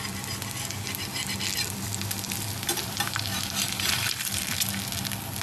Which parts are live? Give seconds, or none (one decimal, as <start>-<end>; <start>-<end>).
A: 0.0-1.5; 4.7-5.4